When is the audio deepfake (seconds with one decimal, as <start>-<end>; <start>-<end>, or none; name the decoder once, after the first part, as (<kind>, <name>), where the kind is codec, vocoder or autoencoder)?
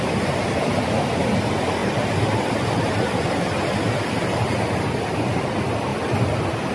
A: none